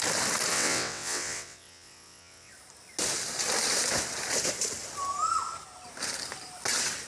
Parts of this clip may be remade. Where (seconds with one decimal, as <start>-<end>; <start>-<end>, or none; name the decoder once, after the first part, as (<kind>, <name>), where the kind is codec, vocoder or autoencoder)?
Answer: 0.5-2.5 (vocoder, WaveNeXt)